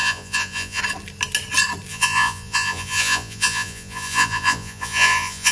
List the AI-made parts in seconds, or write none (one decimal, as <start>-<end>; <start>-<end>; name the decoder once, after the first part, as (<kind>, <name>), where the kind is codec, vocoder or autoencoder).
0.0-0.8 (vocoder, Vocos); 1.9-5.5